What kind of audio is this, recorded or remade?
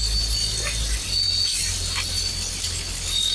recorded